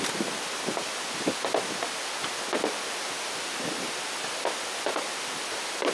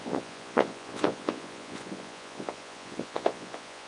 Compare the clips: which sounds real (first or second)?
first